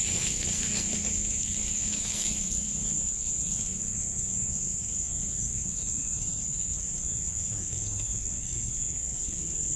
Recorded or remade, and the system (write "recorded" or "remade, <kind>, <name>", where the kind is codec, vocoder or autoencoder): remade, codec, SNAC